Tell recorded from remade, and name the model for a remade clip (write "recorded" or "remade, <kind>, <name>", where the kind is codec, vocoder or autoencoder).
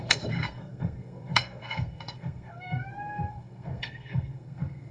remade, codec, SNAC